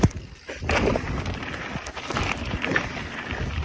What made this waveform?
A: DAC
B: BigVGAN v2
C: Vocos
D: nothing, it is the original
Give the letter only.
D